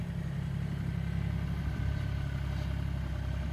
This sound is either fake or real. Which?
real